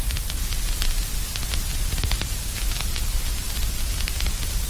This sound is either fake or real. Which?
real